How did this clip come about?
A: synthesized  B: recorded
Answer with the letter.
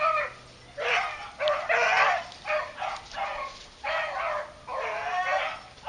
B